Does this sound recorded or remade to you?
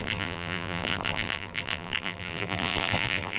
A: remade